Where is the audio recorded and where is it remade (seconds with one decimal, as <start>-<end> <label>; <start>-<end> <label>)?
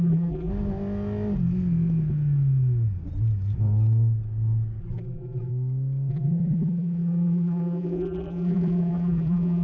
0.0-0.5 remade; 0.5-4.8 recorded; 4.8-5.5 remade; 5.5-6.1 recorded; 6.1-9.6 remade